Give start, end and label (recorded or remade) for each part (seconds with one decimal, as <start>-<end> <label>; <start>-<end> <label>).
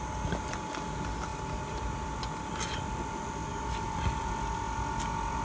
0.0-1.3 recorded; 1.3-2.5 remade; 2.5-3.5 recorded; 3.5-4.3 remade; 4.3-5.4 recorded